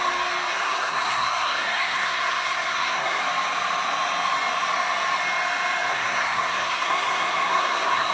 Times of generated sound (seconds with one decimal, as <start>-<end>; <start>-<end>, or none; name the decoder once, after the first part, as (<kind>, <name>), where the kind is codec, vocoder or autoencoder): 0.5-3.2 (codec, SNAC); 5.9-8.1